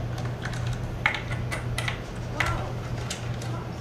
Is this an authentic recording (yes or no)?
yes